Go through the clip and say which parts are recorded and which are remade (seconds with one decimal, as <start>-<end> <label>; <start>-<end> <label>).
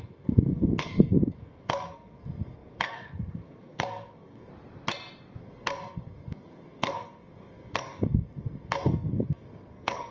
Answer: 0.0-4.5 remade; 4.5-5.4 recorded; 5.4-10.1 remade